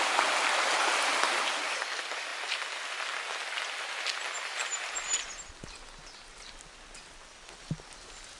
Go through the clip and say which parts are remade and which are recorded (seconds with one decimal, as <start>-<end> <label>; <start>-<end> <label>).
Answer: 0.0-8.4 recorded